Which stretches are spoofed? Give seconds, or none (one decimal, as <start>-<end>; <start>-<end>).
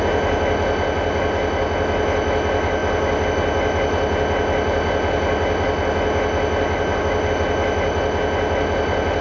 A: none